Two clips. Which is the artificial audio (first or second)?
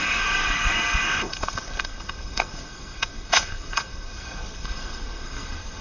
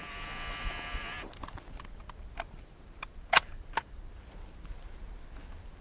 first